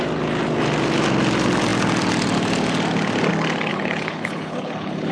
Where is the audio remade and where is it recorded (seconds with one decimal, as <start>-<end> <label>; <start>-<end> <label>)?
0.0-3.7 recorded; 3.7-5.1 remade